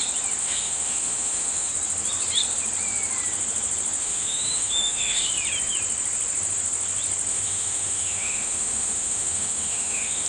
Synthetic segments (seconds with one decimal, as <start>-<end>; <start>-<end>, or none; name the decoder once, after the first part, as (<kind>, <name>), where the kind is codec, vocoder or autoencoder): 0.4-1.7 (autoencoder, DAC-VAE); 4.0-5.3; 7.3-10.3